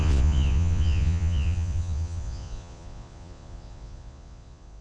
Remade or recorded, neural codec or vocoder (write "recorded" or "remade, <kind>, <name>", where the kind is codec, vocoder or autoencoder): remade, vocoder, Vocos